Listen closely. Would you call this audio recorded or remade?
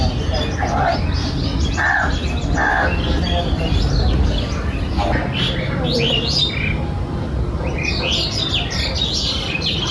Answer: recorded